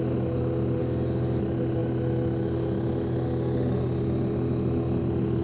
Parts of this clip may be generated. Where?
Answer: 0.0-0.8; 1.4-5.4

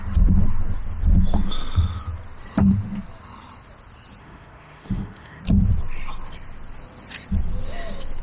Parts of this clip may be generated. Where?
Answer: 4.2-5.4

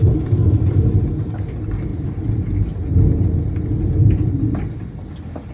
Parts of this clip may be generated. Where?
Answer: none